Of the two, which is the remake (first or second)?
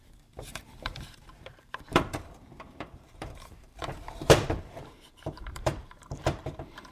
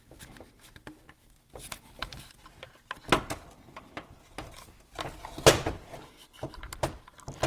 first